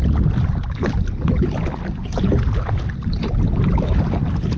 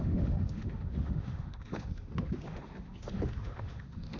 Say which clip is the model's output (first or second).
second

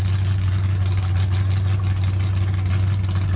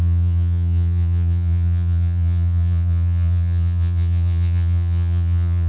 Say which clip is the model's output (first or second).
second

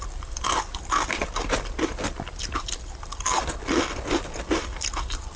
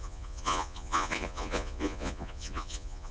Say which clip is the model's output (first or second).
second